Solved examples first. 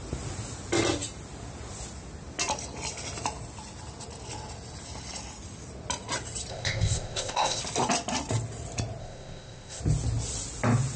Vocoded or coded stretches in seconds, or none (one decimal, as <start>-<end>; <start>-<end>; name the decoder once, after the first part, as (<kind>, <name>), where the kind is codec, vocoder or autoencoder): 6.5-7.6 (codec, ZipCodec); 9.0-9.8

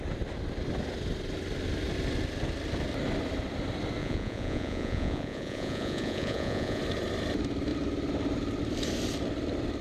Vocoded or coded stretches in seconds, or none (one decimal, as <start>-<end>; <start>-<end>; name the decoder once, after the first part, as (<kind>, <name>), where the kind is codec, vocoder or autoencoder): 4.0-6.8 (vocoder, Vocos)

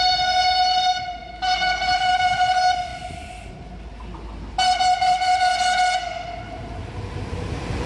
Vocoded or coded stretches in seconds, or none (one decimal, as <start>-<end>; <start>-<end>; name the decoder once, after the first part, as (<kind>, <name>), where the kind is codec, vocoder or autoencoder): none

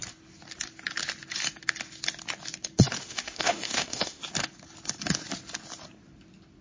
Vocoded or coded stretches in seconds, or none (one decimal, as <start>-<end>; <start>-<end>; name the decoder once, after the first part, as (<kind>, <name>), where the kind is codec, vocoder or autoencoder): 3.0-4.2 (autoencoder, DAC-VAE)

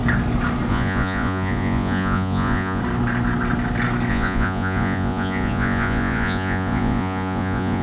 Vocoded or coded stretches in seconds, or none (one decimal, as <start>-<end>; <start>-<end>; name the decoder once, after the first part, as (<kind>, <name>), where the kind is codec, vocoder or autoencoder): 0.7-2.8 (vocoder, Vocos); 4.1-7.8

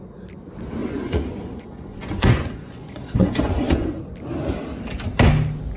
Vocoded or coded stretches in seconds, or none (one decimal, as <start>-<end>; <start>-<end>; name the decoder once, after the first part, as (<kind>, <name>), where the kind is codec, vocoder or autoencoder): 0.8-4.0 (vocoder, Vocos)